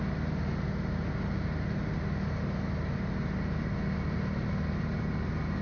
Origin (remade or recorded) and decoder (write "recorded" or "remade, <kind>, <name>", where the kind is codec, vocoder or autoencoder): recorded